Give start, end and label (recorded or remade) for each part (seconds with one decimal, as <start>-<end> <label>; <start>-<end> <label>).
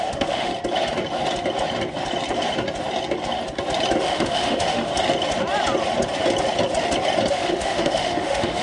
0.0-0.5 remade; 0.5-4.0 recorded; 4.0-4.9 remade; 4.9-7.3 recorded; 7.3-8.6 remade